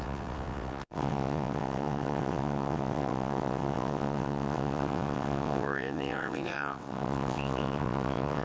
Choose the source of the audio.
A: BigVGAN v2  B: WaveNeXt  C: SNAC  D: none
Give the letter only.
B